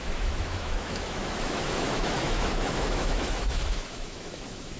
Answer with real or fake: fake